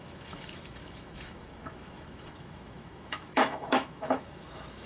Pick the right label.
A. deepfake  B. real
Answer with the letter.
A